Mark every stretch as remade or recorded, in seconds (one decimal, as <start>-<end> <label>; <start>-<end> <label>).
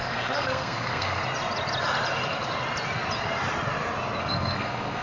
0.0-1.2 remade; 1.2-4.2 recorded; 4.2-5.0 remade